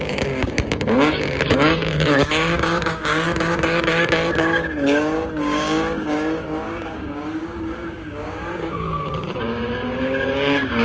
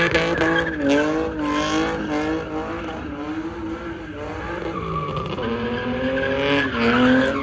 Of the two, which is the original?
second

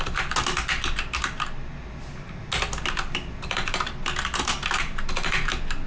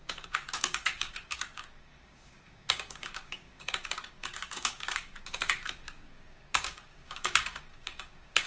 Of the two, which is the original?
first